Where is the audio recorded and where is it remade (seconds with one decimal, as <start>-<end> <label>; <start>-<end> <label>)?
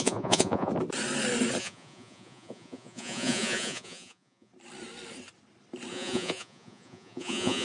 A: 0.0-0.7 remade; 0.7-1.6 recorded; 1.6-4.5 remade; 4.5-5.9 recorded; 5.9-7.6 remade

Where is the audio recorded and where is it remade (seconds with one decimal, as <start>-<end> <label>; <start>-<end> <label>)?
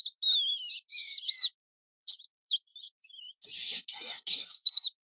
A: 0.0-5.1 remade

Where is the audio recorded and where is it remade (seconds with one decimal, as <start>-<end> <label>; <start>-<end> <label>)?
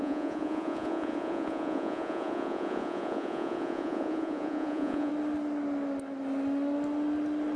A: 0.0-5.1 remade; 5.1-7.6 recorded